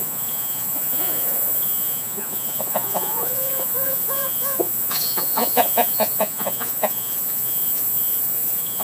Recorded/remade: remade